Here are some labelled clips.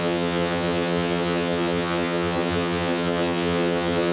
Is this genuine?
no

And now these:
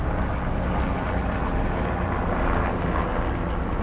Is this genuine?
yes